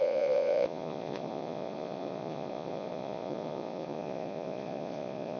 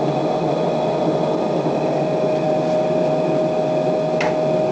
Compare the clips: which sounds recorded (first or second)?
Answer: second